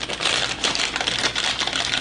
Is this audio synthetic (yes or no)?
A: yes